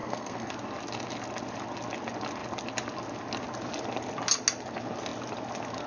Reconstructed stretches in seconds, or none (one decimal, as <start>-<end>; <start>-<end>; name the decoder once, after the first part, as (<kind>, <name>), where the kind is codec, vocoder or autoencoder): 0.0-0.5 (codec, SNAC)